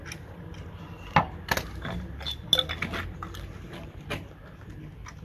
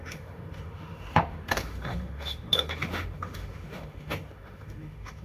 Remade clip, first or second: second